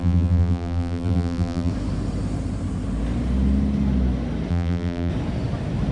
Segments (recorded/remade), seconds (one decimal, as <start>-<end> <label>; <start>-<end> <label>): 0.0-1.7 remade; 1.7-4.5 recorded; 4.5-5.1 remade; 5.1-5.9 recorded